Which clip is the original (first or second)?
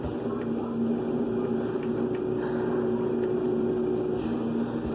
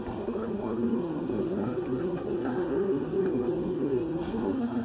first